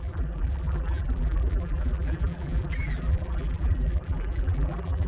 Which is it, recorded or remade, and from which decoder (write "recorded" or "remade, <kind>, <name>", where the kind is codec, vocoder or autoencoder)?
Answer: remade, vocoder, BigVGAN v2